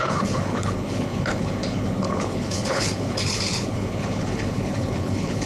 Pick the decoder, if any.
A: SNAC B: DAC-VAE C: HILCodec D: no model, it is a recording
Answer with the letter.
C